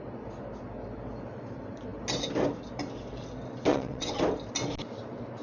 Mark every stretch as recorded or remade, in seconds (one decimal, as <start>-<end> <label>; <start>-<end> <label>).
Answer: 0.0-3.7 recorded; 3.7-4.2 remade; 4.2-5.4 recorded